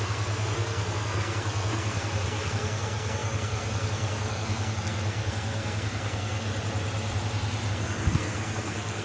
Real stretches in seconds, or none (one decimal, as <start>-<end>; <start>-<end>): 6.5-7.7

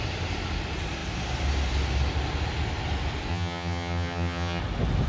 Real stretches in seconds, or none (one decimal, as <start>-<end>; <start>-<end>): 0.0-3.3; 4.6-5.1

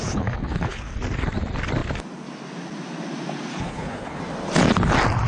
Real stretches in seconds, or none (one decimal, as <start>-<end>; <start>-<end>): 0.9-3.5; 4.2-5.3

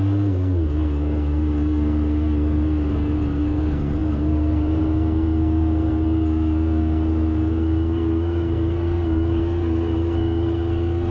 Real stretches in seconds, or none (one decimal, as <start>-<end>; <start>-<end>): none

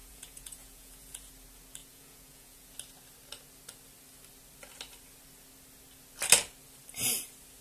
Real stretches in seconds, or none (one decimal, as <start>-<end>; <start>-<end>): 1.3-1.8; 2.7-7.6

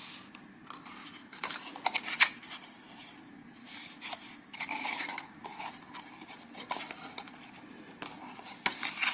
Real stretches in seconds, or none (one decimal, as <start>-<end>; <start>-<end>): 0.0-1.0; 1.8-3.6; 5.7-9.1

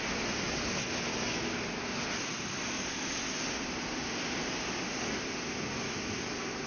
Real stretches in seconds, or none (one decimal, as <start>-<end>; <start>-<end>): 0.0-1.1; 1.6-6.7